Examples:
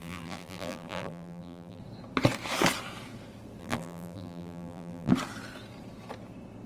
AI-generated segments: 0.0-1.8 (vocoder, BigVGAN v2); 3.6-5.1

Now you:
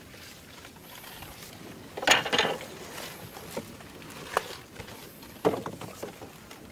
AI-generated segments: none

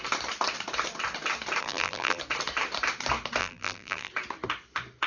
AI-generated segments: 1.6-2.2 (vocoder, BigVGAN v2); 3.4-4.1

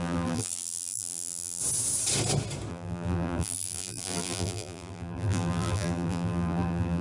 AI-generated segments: 0.0-1.6 (vocoder, BigVGAN v2); 2.7-7.0

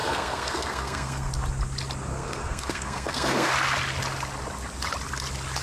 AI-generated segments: 0.0-1.3 (codec, SNAC); 2.1-3.5

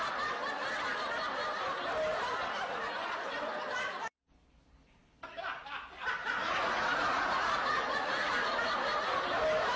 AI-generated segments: 6.2-9.2 (vocoder, Vocos)

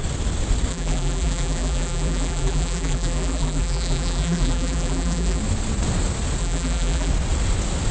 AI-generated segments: 0.7-5.4 (vocoder, BigVGAN v2); 6.4-7.1

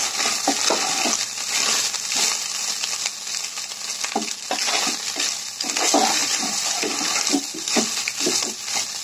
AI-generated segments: 6.2-7.3 (vocoder, BigVGAN v2)